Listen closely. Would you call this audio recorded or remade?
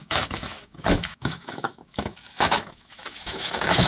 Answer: remade